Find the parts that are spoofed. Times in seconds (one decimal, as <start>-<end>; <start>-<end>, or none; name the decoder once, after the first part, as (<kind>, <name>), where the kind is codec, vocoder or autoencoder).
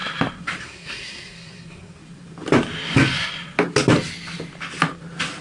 0.6-2.0 (codec, SNAC)